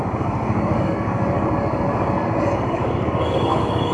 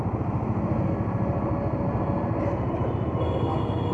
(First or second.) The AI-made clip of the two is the first